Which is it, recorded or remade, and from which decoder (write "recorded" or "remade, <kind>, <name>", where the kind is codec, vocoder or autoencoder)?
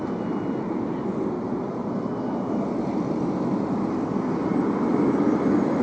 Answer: recorded